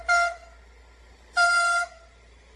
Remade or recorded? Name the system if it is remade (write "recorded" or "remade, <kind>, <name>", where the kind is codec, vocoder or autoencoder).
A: recorded